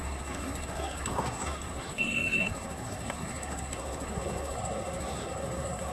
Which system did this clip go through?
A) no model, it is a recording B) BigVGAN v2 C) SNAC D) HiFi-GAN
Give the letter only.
C